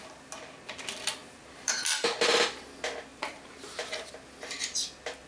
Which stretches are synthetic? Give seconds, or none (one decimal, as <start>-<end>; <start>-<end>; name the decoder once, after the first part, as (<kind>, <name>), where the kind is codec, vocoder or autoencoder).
1.2-2.4 (vocoder, BigVGAN v2); 3.1-4.1